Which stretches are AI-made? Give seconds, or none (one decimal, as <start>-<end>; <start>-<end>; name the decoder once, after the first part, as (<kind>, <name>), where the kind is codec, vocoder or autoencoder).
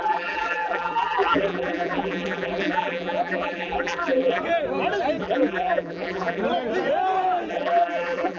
0.0-4.4 (vocoder, BigVGAN v2); 5.2-6.4; 7.5-8.4